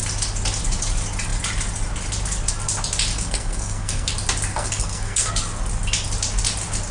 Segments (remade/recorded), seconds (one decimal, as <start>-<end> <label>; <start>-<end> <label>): 0.0-3.1 recorded; 3.1-4.1 remade; 4.1-4.5 recorded; 4.5-5.3 remade; 5.3-6.9 recorded